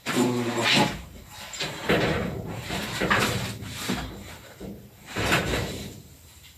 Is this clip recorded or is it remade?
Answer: remade